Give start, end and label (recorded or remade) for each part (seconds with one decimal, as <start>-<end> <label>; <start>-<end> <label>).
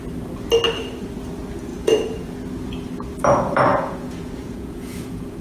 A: 0.0-1.7 recorded; 1.7-2.3 remade; 2.3-3.7 recorded; 3.7-5.4 remade